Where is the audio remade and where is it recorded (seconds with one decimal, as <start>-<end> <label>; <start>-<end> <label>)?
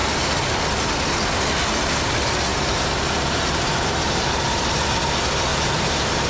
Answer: 0.0-2.5 recorded; 2.5-4.8 remade; 4.8-5.5 recorded; 5.5-6.3 remade